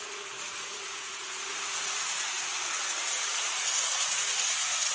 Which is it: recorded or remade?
remade